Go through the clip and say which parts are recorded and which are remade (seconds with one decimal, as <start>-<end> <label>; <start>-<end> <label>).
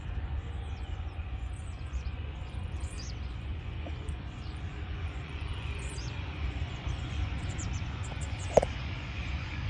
0.0-9.7 remade